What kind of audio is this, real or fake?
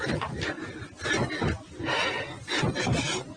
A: real